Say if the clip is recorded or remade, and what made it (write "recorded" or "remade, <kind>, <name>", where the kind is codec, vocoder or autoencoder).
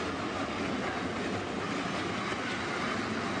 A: recorded